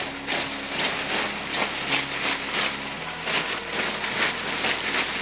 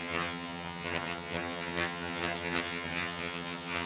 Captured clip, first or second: first